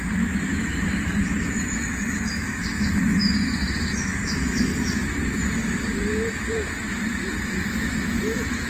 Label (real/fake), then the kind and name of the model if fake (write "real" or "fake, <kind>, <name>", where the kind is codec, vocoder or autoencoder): fake, autoencoder, DAC-VAE